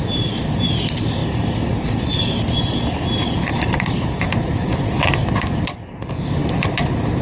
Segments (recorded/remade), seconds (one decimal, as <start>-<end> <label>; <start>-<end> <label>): 0.0-7.2 recorded